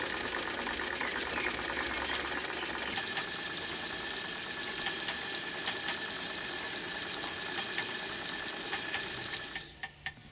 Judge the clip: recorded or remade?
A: recorded